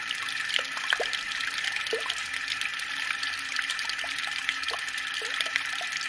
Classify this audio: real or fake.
real